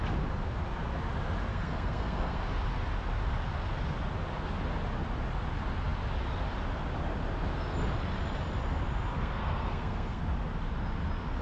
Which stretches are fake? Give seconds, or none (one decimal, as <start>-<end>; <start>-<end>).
1.5-2.4; 9.1-10.2